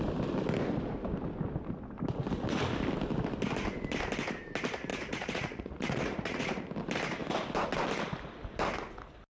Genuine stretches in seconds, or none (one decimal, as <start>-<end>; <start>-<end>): 0.0-4.9; 6.6-9.4